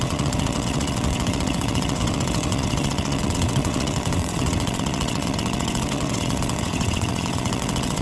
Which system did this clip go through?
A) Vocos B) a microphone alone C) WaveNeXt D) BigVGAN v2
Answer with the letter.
C